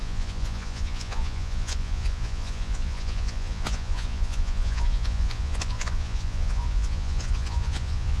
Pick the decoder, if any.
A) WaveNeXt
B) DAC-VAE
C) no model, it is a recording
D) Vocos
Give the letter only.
D